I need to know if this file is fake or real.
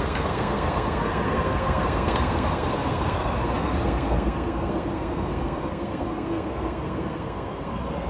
fake